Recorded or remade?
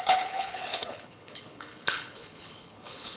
remade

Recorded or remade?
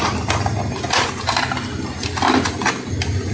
recorded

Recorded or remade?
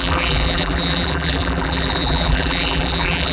remade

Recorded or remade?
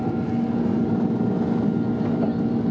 recorded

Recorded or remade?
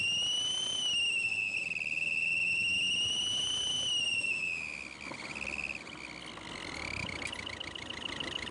recorded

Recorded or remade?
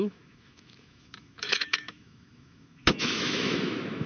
remade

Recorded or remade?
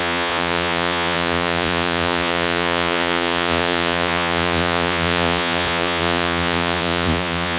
remade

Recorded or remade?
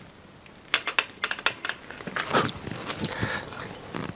recorded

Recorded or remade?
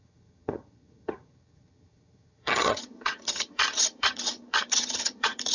remade